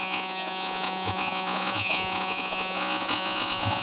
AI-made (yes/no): yes